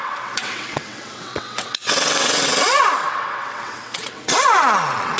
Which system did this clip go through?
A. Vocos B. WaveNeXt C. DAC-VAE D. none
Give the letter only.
B